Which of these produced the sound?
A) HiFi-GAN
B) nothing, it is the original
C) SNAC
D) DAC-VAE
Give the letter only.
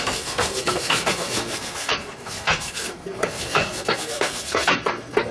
C